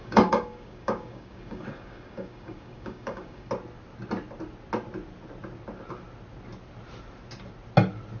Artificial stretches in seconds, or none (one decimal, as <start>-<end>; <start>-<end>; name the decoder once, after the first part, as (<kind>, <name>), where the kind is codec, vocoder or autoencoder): 0.0-3.5 (codec, DAC)

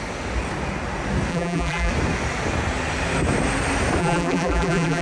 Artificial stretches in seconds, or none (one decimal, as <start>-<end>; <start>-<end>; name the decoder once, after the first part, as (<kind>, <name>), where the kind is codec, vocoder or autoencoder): 1.3-1.9 (vocoder, BigVGAN v2); 4.0-5.0